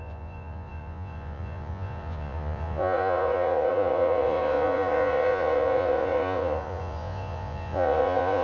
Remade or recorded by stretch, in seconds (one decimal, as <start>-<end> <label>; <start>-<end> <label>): 0.0-8.4 remade